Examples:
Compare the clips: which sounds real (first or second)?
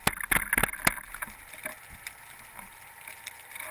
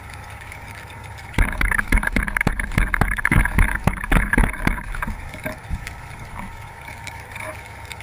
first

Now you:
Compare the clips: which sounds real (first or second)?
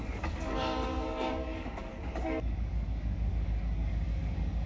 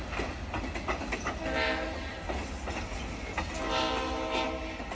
second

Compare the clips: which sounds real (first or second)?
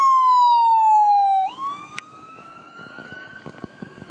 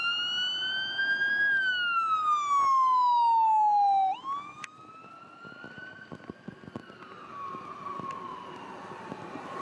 second